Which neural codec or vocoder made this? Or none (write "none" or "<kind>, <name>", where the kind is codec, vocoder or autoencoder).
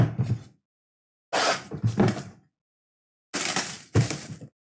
none